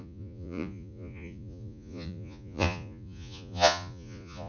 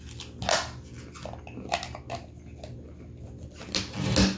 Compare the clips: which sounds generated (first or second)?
first